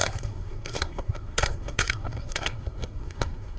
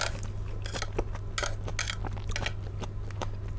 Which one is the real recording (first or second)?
second